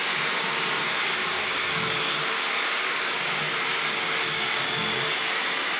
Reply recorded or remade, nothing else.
remade